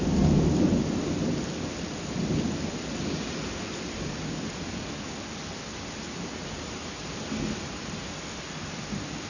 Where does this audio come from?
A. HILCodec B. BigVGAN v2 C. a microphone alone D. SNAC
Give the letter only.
C